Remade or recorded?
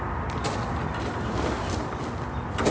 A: recorded